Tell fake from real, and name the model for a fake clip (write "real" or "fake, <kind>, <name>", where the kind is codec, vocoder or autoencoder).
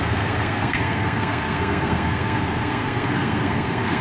fake, codec, SNAC